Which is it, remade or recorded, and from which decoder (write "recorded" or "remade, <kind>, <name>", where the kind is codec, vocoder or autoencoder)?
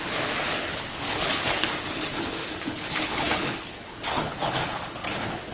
remade, codec, HILCodec